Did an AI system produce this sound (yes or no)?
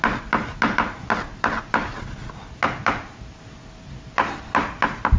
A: no